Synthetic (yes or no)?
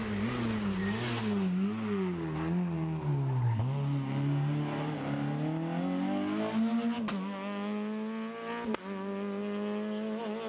no